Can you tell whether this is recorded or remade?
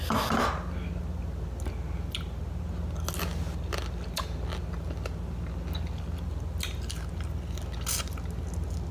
recorded